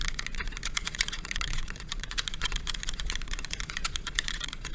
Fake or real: fake